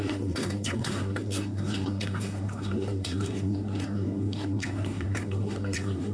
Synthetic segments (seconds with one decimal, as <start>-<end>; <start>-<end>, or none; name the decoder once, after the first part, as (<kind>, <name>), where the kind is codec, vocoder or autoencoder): 0.0-6.1 (codec, SNAC)